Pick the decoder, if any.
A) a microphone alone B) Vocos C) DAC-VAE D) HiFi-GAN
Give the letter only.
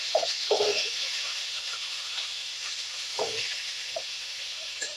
C